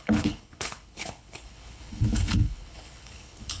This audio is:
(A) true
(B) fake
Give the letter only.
B